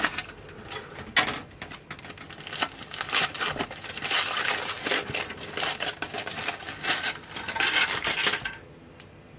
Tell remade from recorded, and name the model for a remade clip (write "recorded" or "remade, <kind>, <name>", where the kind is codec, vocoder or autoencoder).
recorded